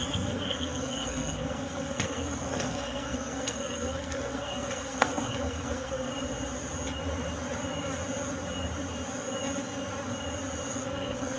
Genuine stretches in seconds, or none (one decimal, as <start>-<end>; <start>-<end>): 6.1-10.7